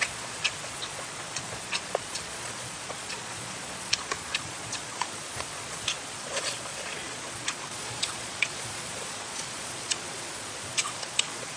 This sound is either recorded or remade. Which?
remade